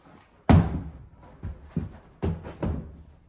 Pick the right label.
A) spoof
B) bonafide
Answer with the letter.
B